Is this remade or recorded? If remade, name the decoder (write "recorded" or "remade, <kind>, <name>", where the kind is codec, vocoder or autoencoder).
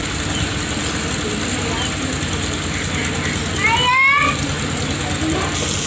recorded